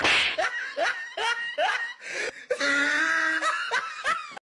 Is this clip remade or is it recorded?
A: recorded